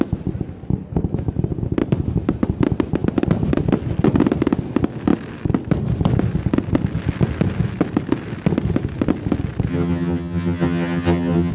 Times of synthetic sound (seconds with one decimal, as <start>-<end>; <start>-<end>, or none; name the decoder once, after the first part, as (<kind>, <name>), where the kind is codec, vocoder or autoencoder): 9.7-11.5 (vocoder, HiFi-GAN)